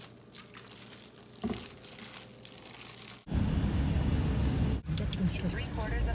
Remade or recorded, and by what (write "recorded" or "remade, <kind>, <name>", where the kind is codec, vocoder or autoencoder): recorded